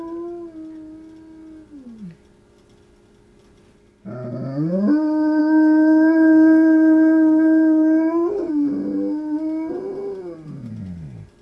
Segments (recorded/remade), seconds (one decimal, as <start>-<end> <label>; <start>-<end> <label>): 0.0-5.4 recorded; 5.4-8.5 remade; 8.5-11.4 recorded